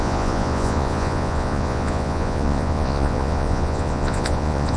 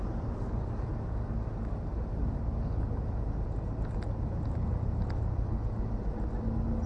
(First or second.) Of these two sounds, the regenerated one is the first